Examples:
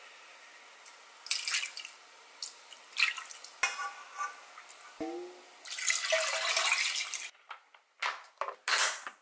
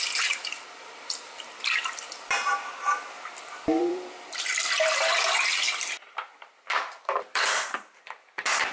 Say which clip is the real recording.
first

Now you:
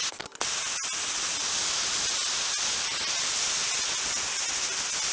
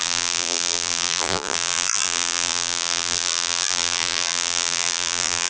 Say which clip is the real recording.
first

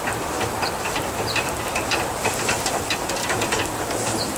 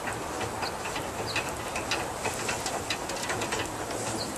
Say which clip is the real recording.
second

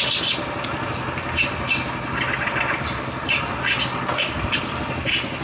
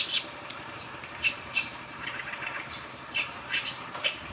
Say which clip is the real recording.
first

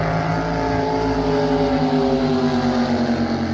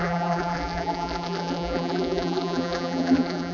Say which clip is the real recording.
first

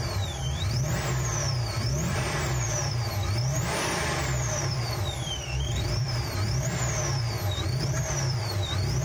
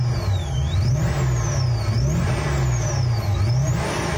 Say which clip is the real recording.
second